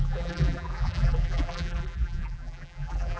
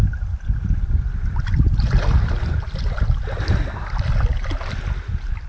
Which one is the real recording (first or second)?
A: second